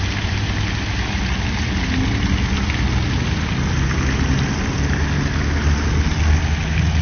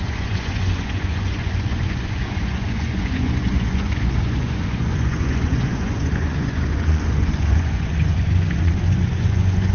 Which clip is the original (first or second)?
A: first